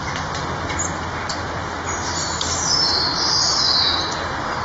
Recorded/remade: recorded